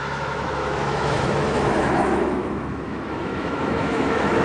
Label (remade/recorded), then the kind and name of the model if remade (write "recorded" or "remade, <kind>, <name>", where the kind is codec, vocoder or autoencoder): remade, autoencoder, DAC-VAE